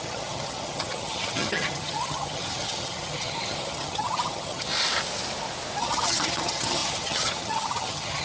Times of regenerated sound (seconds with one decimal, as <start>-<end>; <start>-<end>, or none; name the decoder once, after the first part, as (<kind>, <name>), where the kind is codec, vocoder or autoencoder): 0.0-4.7 (vocoder, HiFi-GAN); 5.8-8.2